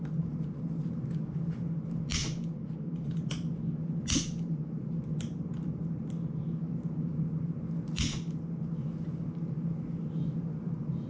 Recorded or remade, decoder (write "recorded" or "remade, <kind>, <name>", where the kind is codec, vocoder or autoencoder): recorded